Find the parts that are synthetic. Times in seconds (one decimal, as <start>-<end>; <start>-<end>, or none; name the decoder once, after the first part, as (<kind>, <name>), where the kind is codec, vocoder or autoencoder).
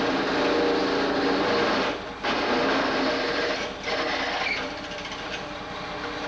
none